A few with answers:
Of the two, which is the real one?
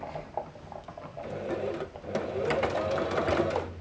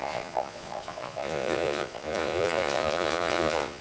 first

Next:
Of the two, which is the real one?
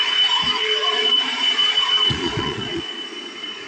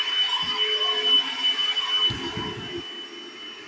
second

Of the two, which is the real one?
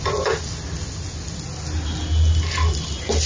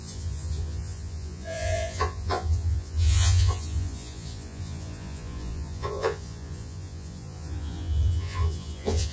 first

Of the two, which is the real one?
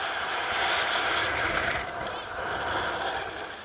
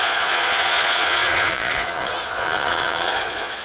first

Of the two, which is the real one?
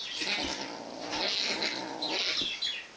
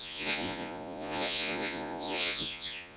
first